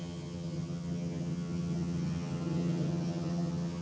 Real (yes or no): no